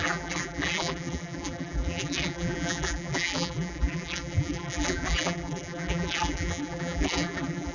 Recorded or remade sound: remade